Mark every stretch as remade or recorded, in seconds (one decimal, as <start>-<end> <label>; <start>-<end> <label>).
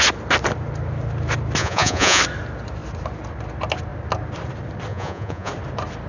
0.0-1.6 recorded; 1.6-2.2 remade; 2.2-4.9 recorded; 4.9-5.5 remade; 5.5-6.1 recorded